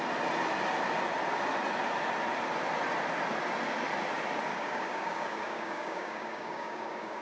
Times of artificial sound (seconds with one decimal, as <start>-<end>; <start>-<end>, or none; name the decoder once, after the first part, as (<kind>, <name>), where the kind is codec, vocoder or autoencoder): 4.5-7.2 (codec, DAC)

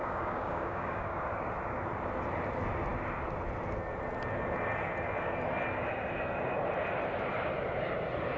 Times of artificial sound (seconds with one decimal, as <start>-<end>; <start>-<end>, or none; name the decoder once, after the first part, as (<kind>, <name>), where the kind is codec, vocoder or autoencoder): 0.0-1.2 (codec, DAC)

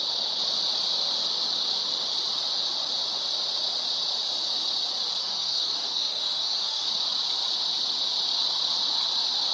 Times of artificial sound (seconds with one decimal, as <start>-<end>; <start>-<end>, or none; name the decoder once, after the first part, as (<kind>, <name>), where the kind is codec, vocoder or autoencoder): 5.2-6.9 (codec, DAC)

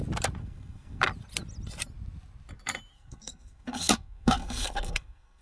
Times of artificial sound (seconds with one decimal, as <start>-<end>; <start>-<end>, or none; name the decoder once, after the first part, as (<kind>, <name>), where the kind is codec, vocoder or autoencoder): 0.4-1.0 (codec, SNAC); 2.9-5.4